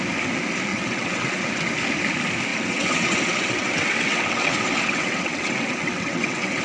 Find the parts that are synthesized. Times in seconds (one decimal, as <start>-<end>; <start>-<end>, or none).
0.7-1.7; 2.5-6.6